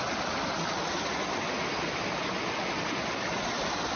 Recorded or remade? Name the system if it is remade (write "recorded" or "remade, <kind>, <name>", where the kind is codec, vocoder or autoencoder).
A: recorded